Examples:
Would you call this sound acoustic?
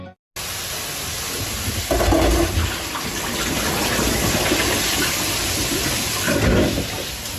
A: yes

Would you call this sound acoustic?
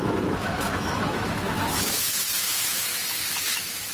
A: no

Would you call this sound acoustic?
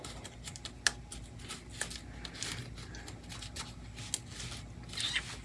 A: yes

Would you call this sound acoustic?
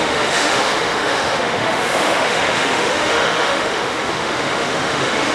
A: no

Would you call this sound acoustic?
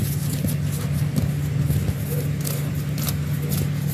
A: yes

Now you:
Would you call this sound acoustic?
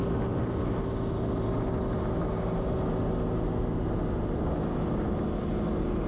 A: yes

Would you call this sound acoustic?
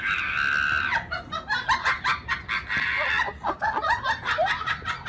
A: yes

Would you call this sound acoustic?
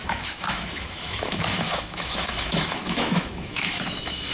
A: no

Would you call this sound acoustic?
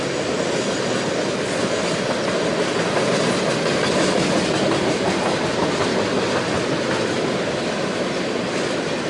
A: yes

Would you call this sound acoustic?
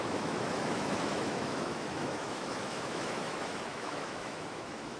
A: no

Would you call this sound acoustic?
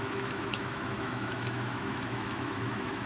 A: no